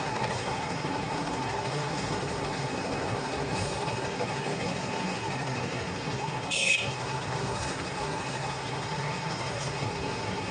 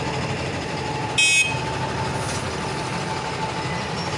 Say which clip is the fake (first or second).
first